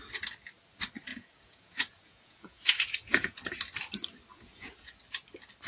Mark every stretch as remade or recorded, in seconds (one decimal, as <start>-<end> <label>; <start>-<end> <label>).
0.0-1.1 recorded; 1.1-3.4 remade; 3.4-4.3 recorded; 4.3-5.0 remade; 5.0-5.7 recorded